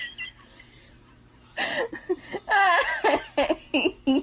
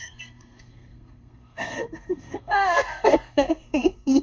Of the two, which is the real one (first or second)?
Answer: first